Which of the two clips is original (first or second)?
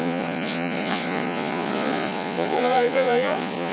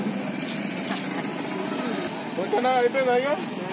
second